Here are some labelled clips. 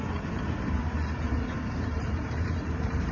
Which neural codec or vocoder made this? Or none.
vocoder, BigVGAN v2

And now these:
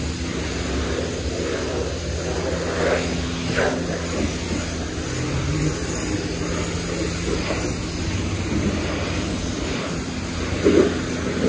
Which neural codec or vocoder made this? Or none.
none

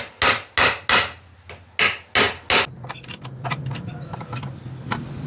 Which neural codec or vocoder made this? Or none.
none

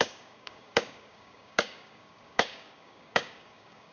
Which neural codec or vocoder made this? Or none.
codec, DAC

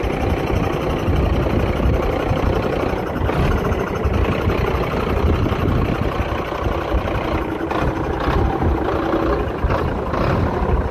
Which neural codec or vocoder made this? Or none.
none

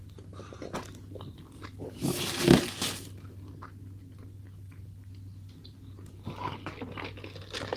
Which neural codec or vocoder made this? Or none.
none